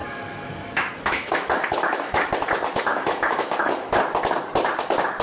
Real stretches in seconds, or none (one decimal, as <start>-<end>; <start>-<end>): 2.3-2.9; 3.9-5.2